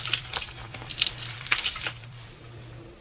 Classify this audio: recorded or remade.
remade